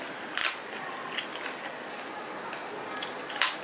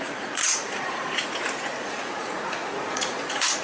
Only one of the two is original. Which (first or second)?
first